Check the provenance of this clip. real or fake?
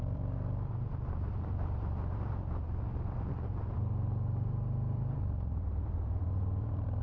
fake